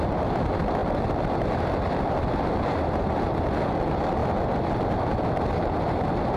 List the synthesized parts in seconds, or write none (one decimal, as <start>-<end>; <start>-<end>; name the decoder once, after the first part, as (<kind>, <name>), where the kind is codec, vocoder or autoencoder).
none